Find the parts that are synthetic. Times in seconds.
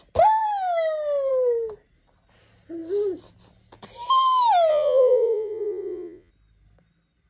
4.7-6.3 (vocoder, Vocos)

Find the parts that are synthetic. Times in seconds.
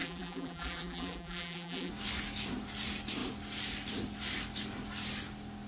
0.0-1.9 (vocoder, BigVGAN v2)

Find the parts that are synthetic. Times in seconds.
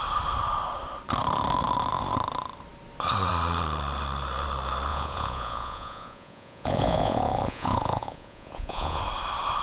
4.9-9.0 (vocoder, Vocos)